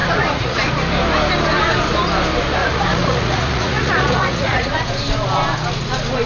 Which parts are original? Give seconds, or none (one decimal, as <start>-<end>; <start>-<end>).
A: 0.7-2.6; 4.8-6.3